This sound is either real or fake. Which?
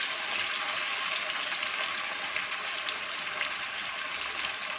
real